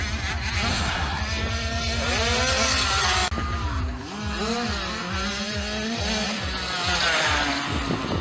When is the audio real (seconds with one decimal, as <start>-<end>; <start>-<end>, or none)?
0.0-0.7; 1.2-8.2